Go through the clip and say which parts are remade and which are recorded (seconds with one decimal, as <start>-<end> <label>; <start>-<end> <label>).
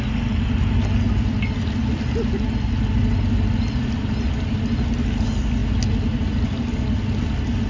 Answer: 0.0-7.7 recorded